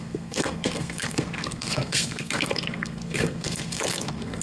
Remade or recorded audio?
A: remade